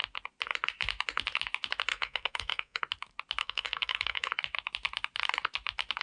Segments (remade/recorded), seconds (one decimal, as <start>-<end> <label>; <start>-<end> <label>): 0.0-1.9 recorded; 1.9-2.8 remade; 2.8-3.4 recorded; 3.4-4.3 remade; 4.3-6.0 recorded